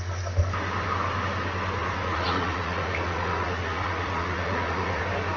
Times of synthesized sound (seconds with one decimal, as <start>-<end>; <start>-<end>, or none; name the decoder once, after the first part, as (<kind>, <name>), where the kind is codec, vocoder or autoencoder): 1.8-5.0 (vocoder, Vocos)